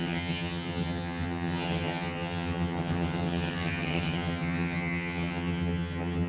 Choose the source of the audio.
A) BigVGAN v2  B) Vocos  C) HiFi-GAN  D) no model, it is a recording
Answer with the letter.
C